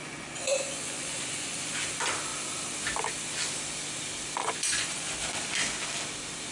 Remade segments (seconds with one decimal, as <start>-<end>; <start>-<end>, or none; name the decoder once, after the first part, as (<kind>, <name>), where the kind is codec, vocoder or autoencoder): 0.0-1.7 (vocoder, Vocos); 4.4-5.1